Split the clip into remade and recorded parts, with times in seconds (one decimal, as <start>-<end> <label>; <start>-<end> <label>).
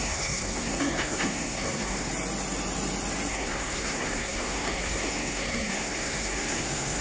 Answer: 0.0-2.1 remade; 2.1-3.3 recorded; 3.3-7.0 remade